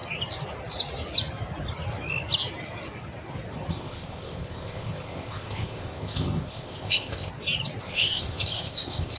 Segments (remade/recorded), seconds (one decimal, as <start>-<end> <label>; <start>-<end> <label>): 0.0-3.7 recorded; 3.7-7.3 remade; 7.3-7.8 recorded; 7.8-9.2 remade